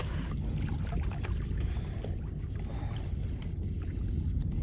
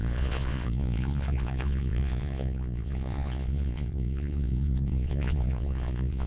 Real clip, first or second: first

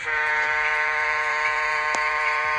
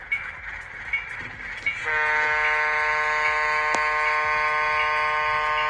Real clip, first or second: second